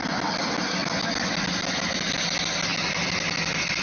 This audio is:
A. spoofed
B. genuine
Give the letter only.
B